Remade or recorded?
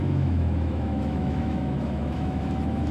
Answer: remade